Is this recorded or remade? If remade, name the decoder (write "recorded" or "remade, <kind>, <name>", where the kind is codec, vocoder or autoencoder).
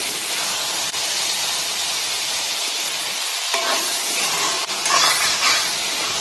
remade, vocoder, BigVGAN v2